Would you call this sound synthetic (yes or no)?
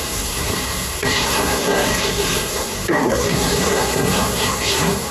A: yes